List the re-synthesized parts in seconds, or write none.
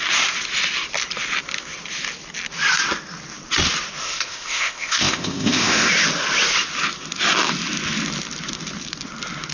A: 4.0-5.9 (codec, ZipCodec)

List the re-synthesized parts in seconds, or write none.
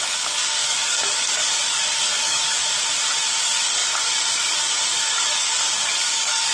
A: 0.0-2.6 (codec, DAC); 3.4-6.5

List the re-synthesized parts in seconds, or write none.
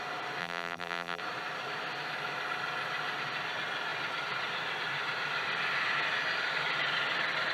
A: 0.4-1.2 (vocoder, BigVGAN v2)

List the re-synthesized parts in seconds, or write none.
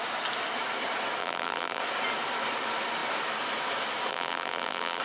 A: 1.2-1.8 (vocoder, BigVGAN v2); 4.1-5.0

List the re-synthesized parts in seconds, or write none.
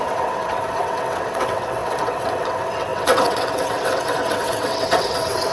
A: 0.0-5.5 (vocoder, WaveNeXt)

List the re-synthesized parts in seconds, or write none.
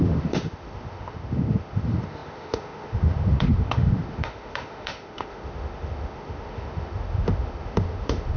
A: 0.0-8.4 (autoencoder, DAC-VAE)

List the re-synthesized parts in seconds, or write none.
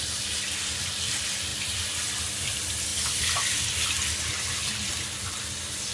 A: 0.0-2.9 (vocoder, BigVGAN v2); 4.9-5.9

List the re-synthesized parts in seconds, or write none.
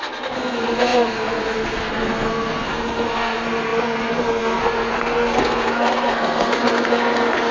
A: 0.0-7.5 (codec, SNAC)